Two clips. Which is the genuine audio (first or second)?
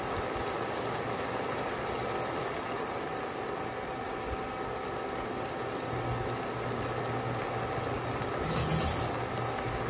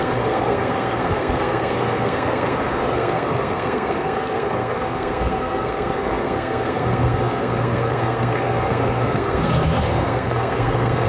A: first